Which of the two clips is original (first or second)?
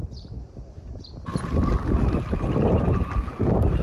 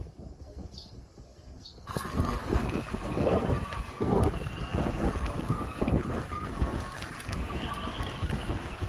first